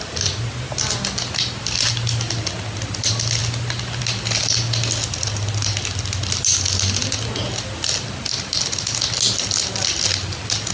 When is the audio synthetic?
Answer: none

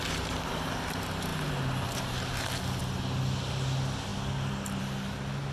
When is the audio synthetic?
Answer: 0.0-0.8 (vocoder, BigVGAN v2)

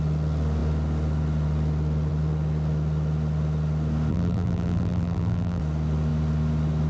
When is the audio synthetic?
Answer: 4.1-5.6 (vocoder, BigVGAN v2)

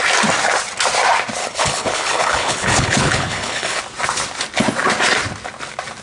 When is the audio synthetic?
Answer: 1.4-3.8 (codec, HILCodec)